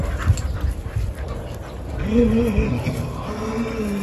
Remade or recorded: recorded